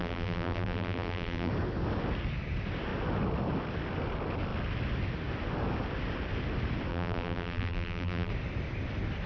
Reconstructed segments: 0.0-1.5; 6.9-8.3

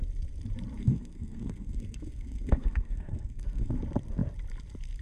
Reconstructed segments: 0.8-3.8

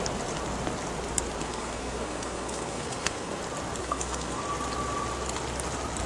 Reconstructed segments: 1.4-3.4; 3.8-4.4